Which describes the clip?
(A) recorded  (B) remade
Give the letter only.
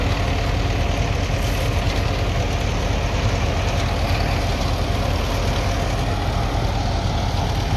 A